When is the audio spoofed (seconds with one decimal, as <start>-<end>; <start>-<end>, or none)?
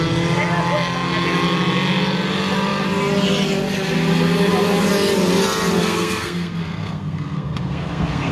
5.8-8.3